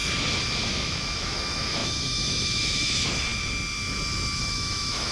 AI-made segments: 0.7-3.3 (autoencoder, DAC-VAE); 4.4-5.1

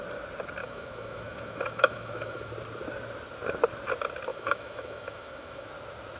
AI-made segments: 0.6-2.5 (autoencoder, DAC-VAE); 4.3-5.7

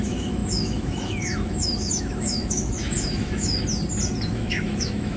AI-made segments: 0.0-3.5 (autoencoder, DAC-VAE); 4.3-5.2

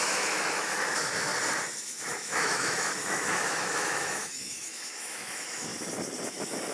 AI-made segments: 0.0-1.3 (autoencoder, DAC-VAE); 1.8-5.7; 6.3-6.7

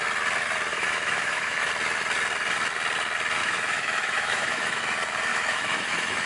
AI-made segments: 0.7-1.7 (autoencoder, DAC-VAE); 3.4-4.8; 5.3-6.3

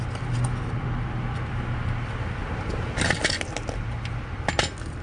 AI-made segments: none